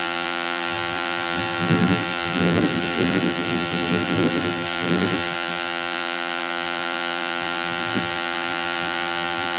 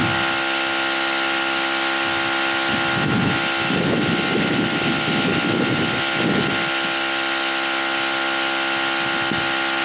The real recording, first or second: second